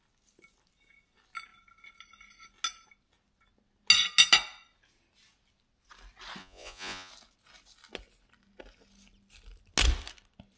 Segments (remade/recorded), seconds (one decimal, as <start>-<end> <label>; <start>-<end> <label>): 0.0-6.4 recorded; 6.4-7.1 remade; 7.1-10.6 recorded